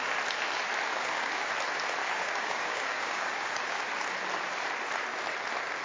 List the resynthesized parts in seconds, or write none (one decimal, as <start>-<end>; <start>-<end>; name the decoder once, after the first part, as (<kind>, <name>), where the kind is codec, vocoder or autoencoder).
0.9-1.5 (codec, DAC); 2.0-3.8